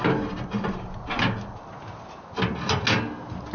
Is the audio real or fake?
real